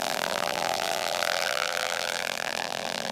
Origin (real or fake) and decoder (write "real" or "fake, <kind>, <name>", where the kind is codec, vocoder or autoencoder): fake, vocoder, BigVGAN v2